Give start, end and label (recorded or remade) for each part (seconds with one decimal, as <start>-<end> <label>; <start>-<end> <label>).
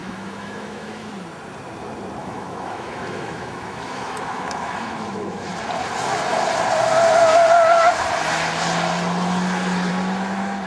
0.0-1.1 remade; 1.1-2.2 recorded; 2.2-5.5 remade; 5.5-10.7 recorded